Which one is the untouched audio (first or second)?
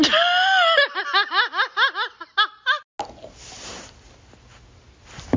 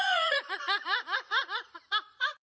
first